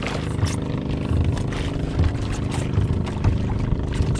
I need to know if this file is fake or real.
real